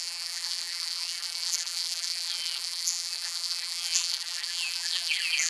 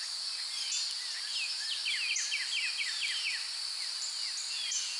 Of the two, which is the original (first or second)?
second